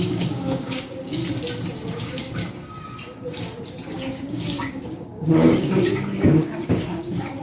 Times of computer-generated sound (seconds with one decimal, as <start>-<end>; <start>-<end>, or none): 0.0-1.2; 1.9-2.4; 3.9-7.4